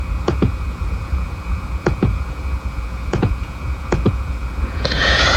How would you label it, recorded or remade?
remade